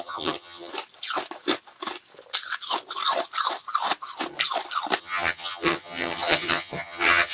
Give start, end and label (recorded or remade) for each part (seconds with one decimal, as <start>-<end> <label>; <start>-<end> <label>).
0.0-0.7 remade; 0.7-5.0 recorded; 5.0-7.3 remade